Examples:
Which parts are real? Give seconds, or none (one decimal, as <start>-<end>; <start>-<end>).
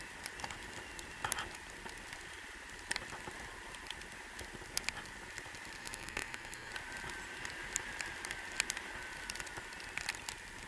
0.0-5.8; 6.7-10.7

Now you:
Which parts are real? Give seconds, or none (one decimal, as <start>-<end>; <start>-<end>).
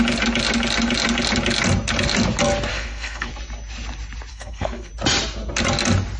0.0-2.7; 3.3-4.3; 4.9-6.2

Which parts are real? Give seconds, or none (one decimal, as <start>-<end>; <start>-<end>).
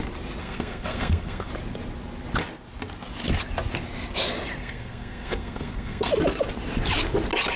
0.0-0.4; 1.5-4.6; 6.1-7.6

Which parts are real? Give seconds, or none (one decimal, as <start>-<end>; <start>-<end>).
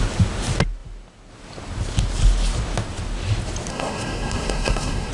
0.0-3.7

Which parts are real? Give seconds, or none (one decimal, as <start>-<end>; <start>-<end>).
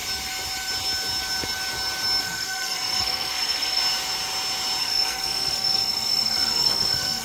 0.0-2.2; 3.8-4.8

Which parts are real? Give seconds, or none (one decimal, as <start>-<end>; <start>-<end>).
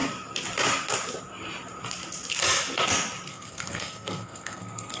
0.0-3.3